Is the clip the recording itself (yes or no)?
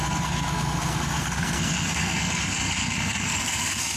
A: no